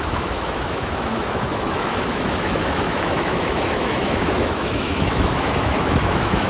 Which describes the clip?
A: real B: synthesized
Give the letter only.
B